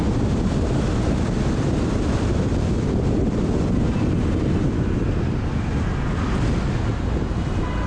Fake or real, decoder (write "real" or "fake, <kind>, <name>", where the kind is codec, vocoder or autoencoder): real